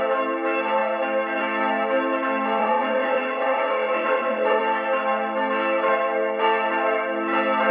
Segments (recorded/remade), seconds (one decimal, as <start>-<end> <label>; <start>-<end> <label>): 0.0-2.6 recorded; 2.6-4.6 remade; 4.6-7.7 recorded